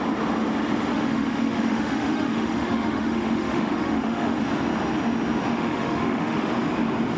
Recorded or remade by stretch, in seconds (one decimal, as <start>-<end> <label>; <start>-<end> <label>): 0.0-0.9 recorded; 0.9-4.4 remade; 4.4-5.5 recorded; 5.5-6.5 remade; 6.5-7.2 recorded

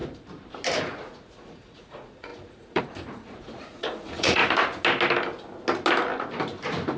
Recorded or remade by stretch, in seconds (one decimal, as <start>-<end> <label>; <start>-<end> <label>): 0.0-0.8 recorded; 0.8-4.4 remade; 4.4-7.0 recorded

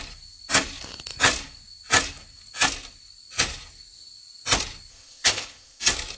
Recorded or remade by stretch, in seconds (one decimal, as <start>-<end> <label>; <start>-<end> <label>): 0.0-4.9 recorded; 4.9-5.8 remade; 5.8-6.2 recorded

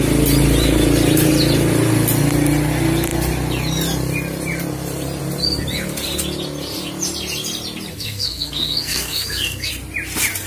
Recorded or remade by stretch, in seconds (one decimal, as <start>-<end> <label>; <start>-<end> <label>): 0.0-7.9 recorded; 7.9-9.7 remade; 9.7-10.5 recorded

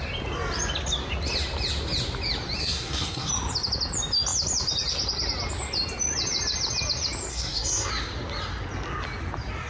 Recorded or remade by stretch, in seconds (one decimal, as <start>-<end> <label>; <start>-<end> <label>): 0.0-2.6 recorded; 2.6-3.3 remade; 3.3-7.3 recorded; 7.3-7.9 remade; 7.9-9.7 recorded

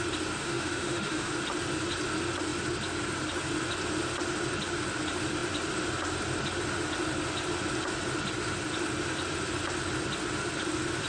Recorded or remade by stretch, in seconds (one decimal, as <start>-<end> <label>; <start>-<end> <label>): 0.0-0.4 recorded; 0.4-1.3 remade; 1.3-11.1 recorded